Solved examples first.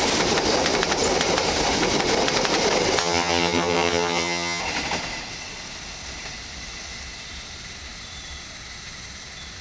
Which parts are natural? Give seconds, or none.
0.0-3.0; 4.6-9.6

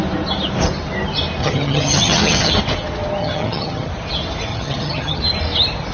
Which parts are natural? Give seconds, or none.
0.0-1.4; 2.5-3.2; 3.9-4.5; 5.2-5.9

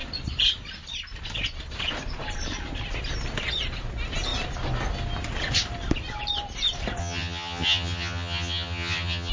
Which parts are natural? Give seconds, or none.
0.0-7.0

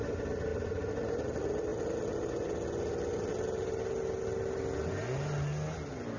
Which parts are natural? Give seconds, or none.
0.0-6.2

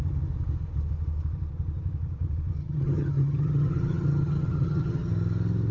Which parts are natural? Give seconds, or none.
0.0-2.6; 5.1-5.7

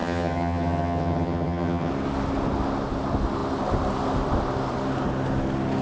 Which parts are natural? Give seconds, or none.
1.9-5.8